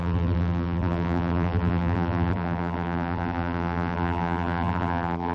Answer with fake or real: fake